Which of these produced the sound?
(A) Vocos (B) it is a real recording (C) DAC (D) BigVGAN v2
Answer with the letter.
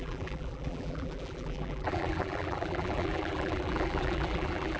D